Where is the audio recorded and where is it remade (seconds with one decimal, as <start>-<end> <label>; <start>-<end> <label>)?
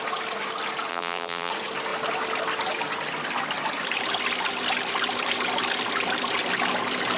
0.0-0.9 recorded; 0.9-1.5 remade; 1.5-7.2 recorded